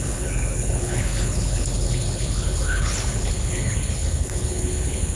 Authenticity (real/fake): fake